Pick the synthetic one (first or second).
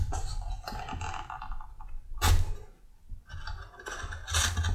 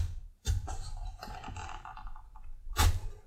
second